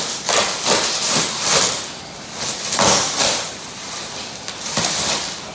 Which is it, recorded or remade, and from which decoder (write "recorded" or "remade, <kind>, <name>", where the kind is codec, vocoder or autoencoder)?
recorded